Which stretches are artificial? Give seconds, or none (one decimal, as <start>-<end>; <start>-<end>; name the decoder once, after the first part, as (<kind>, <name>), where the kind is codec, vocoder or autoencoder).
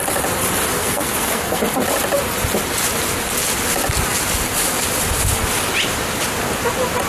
0.8-1.6 (codec, SNAC)